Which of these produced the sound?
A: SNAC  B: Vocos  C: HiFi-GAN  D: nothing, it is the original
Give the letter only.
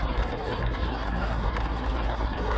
A